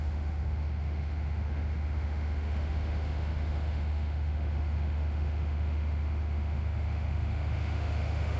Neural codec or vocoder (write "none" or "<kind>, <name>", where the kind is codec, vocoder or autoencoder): autoencoder, DAC-VAE